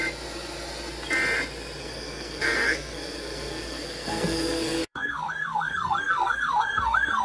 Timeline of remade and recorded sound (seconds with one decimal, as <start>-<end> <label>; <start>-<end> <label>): 0.0-1.8 recorded; 1.8-7.2 remade